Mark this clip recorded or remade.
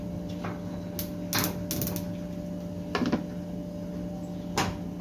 recorded